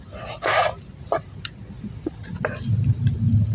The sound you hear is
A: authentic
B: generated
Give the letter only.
A